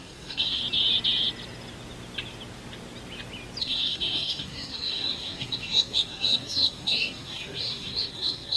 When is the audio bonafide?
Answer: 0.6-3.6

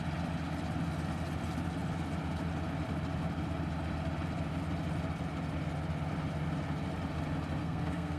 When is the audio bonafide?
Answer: 0.0-7.6

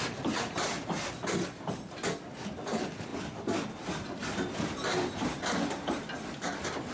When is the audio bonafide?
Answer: 0.0-6.9

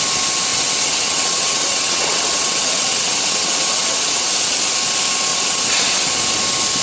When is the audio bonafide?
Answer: 0.0-0.5; 4.6-5.3; 6.1-6.8

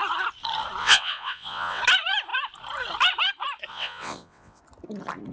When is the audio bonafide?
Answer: 0.0-0.8; 1.8-3.7; 4.6-5.3

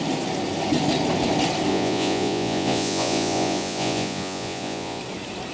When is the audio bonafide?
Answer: 0.0-1.7; 5.0-5.5

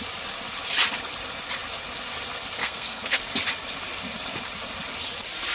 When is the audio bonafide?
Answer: 0.0-2.6; 3.2-5.5

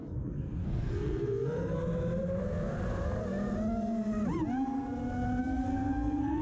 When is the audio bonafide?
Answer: 1.8-5.4